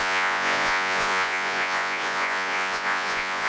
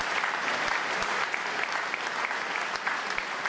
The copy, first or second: first